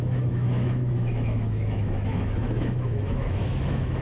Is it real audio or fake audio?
fake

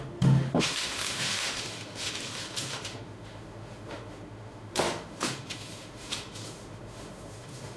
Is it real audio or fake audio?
fake